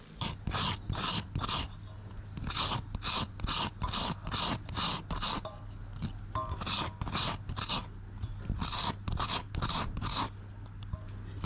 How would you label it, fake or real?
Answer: real